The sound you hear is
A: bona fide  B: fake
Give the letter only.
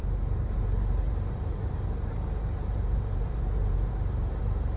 B